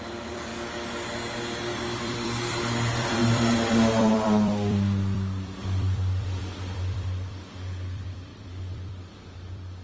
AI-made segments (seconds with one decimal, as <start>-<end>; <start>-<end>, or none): 0.0-0.5; 2.0-9.8